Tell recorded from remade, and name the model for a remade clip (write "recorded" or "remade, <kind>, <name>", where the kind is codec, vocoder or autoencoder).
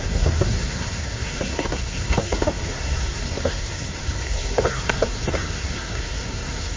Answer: remade, codec, SNAC